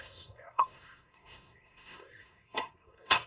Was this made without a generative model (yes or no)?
no